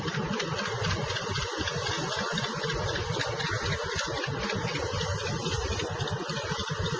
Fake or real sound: real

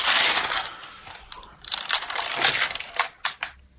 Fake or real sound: real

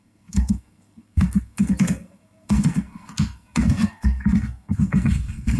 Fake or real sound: fake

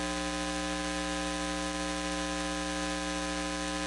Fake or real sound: real